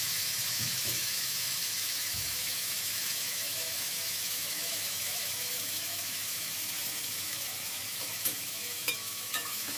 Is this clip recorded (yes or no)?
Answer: no